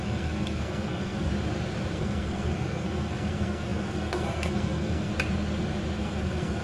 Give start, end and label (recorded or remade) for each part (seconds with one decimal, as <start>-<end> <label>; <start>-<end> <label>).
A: 0.0-1.3 remade; 1.3-1.9 recorded; 1.9-5.1 remade; 5.1-6.0 recorded; 6.0-6.6 remade

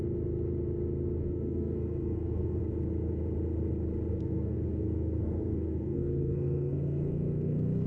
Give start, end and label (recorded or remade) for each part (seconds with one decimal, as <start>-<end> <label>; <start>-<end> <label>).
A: 0.0-1.2 recorded; 1.2-2.6 remade; 2.6-4.1 recorded; 4.1-7.9 remade

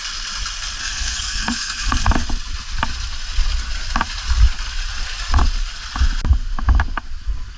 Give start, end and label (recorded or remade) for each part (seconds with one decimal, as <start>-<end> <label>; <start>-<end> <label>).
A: 0.0-0.8 recorded; 0.8-2.1 remade; 2.1-7.6 recorded

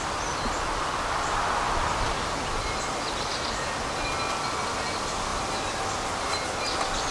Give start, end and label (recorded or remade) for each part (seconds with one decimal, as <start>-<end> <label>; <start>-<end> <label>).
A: 0.0-7.1 recorded

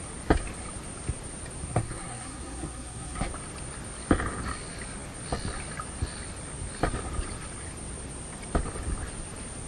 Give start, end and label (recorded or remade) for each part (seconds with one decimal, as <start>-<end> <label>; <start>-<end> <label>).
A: 0.0-1.7 recorded; 1.7-3.3 remade; 3.3-9.7 recorded

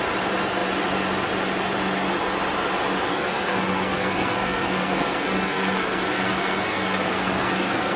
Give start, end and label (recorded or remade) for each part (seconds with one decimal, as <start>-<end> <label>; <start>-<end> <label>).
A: 0.0-3.1 recorded; 3.1-8.0 remade